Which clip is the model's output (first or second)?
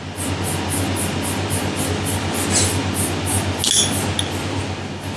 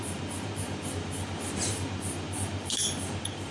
second